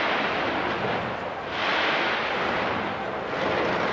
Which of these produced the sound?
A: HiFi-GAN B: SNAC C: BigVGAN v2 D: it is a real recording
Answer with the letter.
D